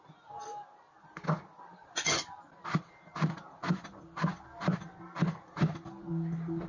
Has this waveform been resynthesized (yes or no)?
no